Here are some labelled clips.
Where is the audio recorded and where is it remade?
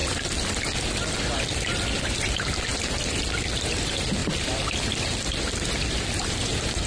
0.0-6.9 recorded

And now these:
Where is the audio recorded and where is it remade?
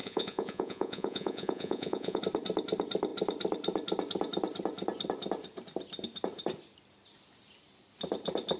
0.0-2.2 remade; 2.2-8.6 recorded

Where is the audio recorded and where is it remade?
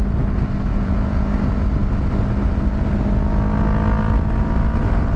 0.0-0.7 recorded; 0.7-1.3 remade; 1.3-5.2 recorded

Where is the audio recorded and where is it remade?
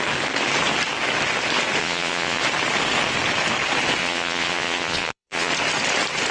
0.0-1.8 recorded; 1.8-2.4 remade; 2.4-4.0 recorded; 4.0-5.5 remade; 5.5-6.3 recorded